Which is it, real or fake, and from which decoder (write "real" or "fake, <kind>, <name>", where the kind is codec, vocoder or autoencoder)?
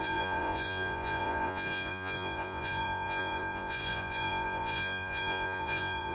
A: fake, vocoder, Vocos